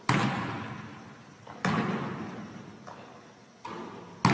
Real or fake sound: real